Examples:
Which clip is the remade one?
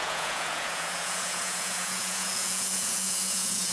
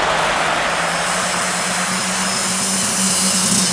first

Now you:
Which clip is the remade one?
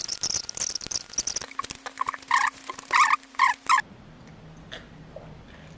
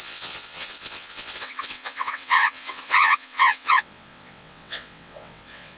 second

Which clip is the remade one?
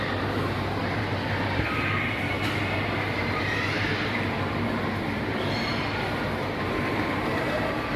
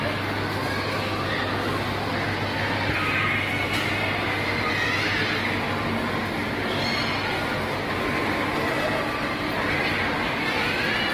first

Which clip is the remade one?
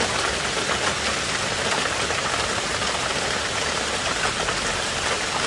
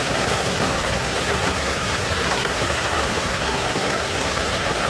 second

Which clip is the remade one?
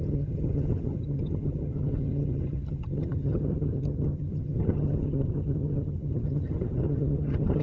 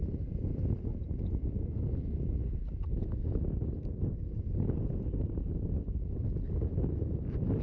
first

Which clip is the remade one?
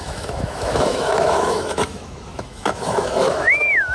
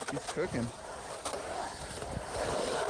first